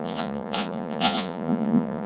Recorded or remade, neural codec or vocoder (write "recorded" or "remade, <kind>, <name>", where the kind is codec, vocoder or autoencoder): remade, vocoder, Vocos